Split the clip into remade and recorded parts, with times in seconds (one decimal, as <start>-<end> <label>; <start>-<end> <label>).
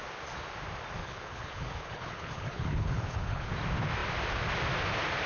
0.0-1.0 recorded; 1.0-3.5 remade; 3.5-5.3 recorded